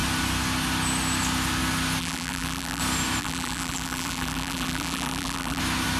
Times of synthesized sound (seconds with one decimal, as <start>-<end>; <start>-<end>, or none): 2.0-2.8; 3.2-5.6